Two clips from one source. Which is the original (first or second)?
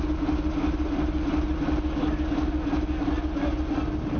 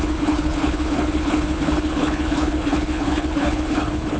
first